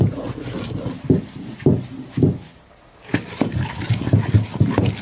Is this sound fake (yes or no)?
no